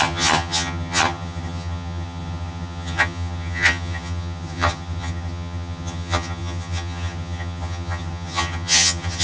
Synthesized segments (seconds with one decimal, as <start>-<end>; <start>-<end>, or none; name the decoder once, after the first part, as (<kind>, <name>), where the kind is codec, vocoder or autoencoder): 0.0-9.2 (vocoder, HiFi-GAN)